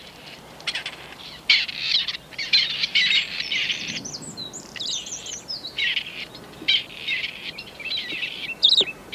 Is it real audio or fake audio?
fake